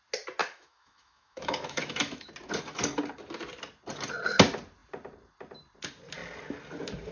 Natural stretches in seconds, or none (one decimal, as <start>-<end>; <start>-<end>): 0.0-0.4; 2.3-7.1